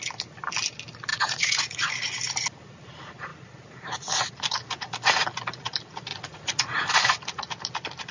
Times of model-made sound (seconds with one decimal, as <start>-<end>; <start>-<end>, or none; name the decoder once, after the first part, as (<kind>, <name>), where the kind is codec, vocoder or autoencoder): 1.1-1.9 (vocoder, Vocos); 6.1-6.9